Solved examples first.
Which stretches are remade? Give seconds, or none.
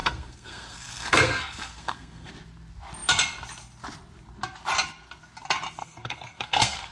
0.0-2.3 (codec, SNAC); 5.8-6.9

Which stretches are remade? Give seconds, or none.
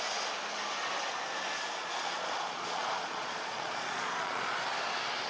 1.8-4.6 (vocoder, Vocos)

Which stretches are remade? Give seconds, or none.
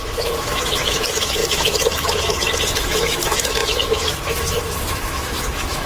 0.0-5.9 (autoencoder, DAC-VAE)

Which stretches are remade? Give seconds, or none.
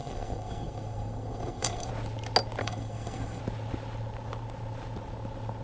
0.0-1.9 (codec, SNAC); 2.6-3.4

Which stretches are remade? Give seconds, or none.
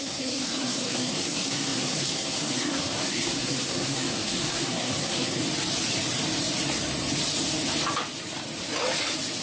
0.0-5.4 (codec, SNAC)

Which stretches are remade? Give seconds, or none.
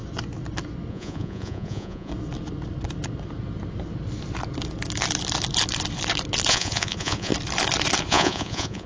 0.9-2.1 (vocoder, Vocos); 6.5-7.3; 8.0-8.9